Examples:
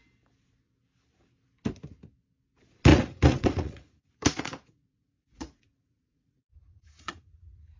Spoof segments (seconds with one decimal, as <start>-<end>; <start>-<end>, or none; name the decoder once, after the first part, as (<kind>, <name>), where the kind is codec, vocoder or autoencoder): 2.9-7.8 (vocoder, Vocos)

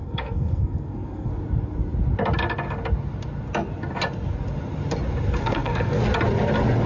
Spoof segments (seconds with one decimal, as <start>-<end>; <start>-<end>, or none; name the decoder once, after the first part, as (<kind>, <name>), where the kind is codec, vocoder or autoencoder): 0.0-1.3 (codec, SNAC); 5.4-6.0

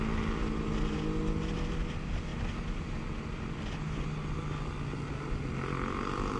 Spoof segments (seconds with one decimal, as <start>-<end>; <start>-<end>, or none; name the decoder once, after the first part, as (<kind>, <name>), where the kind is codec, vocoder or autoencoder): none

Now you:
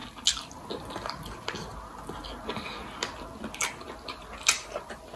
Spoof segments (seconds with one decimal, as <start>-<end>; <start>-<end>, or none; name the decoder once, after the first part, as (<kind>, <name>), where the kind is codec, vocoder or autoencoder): none